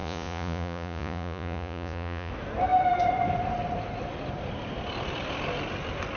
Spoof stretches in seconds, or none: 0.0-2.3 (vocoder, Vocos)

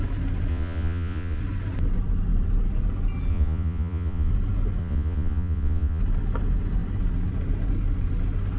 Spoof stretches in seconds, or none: 0.5-1.4 (vocoder, Vocos); 3.3-4.3; 4.8-6.0

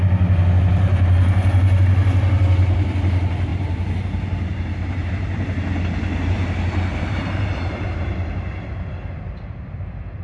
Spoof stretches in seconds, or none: 3.5-5.1 (vocoder, BigVGAN v2); 6.9-8.7